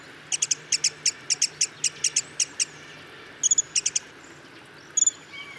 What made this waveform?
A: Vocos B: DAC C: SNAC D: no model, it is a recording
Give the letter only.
D